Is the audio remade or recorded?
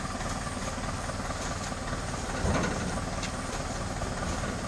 recorded